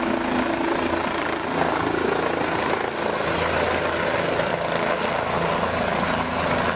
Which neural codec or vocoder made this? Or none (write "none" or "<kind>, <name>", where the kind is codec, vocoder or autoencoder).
none